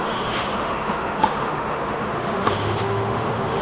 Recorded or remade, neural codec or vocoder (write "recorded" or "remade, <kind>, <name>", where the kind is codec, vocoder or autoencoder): remade, autoencoder, DAC-VAE